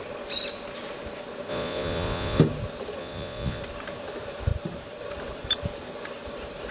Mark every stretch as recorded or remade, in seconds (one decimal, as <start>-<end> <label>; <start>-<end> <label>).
0.0-1.5 recorded; 1.5-2.4 remade; 2.4-3.0 recorded; 3.0-3.6 remade; 3.6-6.7 recorded

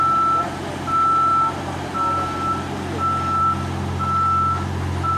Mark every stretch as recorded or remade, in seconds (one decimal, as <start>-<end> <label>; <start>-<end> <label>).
0.0-5.2 recorded